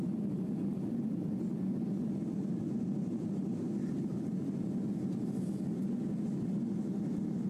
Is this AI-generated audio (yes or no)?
no